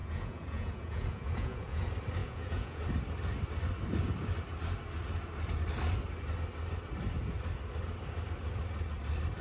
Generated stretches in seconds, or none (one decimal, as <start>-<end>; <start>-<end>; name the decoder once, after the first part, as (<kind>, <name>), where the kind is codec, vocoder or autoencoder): 0.0-1.8 (vocoder, Vocos); 2.2-2.8